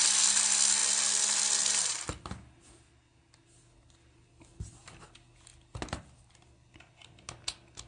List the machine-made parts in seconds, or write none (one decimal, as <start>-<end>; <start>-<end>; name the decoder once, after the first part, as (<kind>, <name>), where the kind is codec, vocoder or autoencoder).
none